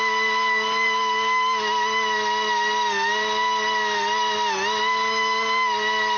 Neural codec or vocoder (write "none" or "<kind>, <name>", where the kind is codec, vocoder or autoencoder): none